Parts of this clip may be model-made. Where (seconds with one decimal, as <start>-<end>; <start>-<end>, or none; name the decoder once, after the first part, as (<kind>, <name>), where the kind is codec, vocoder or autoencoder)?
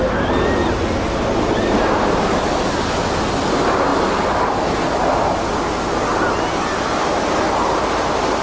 none